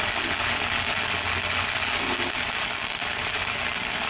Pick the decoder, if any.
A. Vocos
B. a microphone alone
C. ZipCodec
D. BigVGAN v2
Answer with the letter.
B